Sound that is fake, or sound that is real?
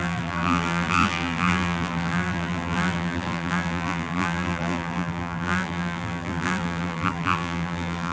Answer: fake